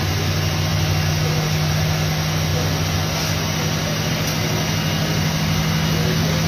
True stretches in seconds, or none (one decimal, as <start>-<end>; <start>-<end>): 0.0-6.5